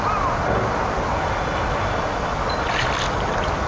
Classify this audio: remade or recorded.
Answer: recorded